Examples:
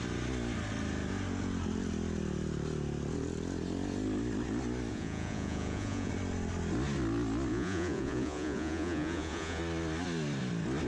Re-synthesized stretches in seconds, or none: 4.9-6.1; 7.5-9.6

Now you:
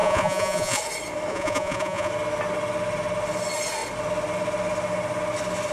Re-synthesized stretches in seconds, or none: 0.0-0.8; 1.3-2.1

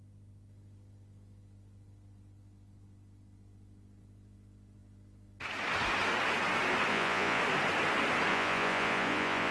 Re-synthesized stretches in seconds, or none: 6.9-7.4; 8.3-9.5

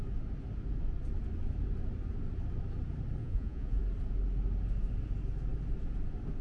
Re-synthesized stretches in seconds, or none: 3.2-3.8